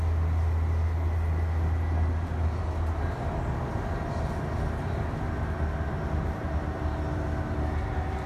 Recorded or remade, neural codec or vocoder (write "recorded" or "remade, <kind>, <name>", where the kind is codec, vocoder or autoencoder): recorded